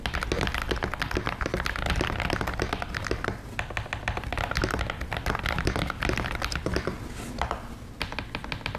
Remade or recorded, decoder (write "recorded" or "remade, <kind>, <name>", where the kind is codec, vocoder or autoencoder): recorded